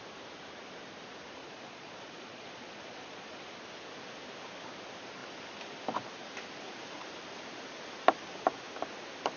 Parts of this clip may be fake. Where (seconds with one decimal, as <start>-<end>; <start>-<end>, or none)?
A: 1.4-3.5